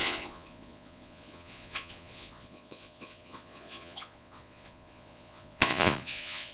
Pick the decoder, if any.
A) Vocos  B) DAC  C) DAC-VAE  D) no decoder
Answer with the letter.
A